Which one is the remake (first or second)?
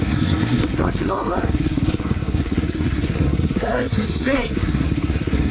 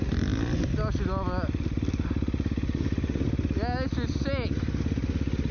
first